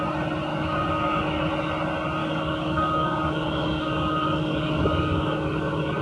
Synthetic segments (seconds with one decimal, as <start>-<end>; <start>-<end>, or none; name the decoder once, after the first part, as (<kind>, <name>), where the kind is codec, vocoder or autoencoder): 0.5-1.5 (codec, DAC); 2.2-6.0